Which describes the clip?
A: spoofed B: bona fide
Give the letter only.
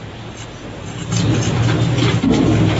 B